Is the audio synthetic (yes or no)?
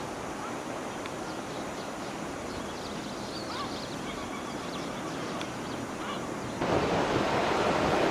no